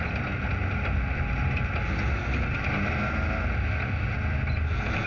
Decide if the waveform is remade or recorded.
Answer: recorded